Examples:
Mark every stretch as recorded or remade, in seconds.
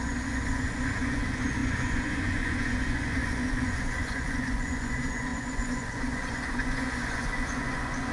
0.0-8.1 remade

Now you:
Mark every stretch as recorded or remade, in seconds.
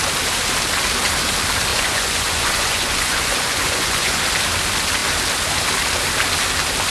0.0-1.7 recorded; 1.7-4.2 remade; 4.2-6.9 recorded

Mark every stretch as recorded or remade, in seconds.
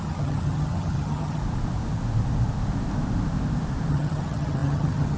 0.0-1.4 remade; 1.4-3.9 recorded; 3.9-5.2 remade